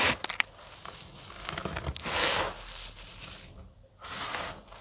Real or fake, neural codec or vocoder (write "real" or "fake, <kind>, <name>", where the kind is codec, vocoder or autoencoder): real